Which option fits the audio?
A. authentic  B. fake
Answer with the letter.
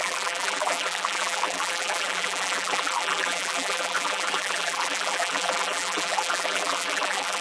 B